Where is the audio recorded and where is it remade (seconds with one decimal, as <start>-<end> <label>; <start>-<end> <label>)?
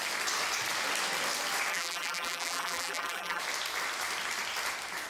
0.0-1.7 recorded; 1.7-3.4 remade; 3.4-5.1 recorded